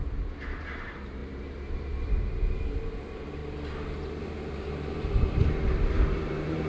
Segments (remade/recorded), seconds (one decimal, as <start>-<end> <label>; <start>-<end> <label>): 0.0-3.4 remade; 3.4-4.2 recorded; 4.2-6.7 remade

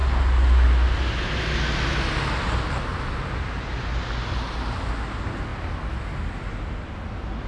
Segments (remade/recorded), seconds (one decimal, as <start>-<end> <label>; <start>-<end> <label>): 0.0-7.5 recorded

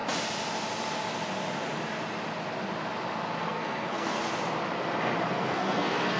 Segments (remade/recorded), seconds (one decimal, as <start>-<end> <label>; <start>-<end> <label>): 0.0-3.4 recorded; 3.4-4.2 remade; 4.2-5.3 recorded; 5.3-6.2 remade

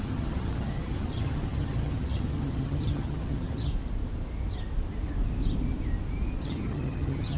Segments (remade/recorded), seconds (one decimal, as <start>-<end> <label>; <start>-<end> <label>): 0.0-3.7 remade; 3.7-6.4 recorded; 6.4-7.4 remade

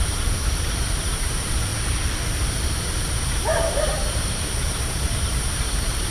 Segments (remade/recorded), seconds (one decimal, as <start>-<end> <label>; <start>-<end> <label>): 0.0-1.7 remade; 1.7-3.1 recorded; 3.1-6.1 remade